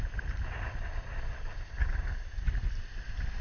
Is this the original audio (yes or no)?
yes